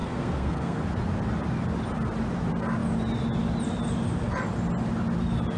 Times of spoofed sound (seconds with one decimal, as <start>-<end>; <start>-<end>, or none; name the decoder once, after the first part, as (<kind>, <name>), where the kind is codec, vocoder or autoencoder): 0.0-0.8 (codec, SNAC)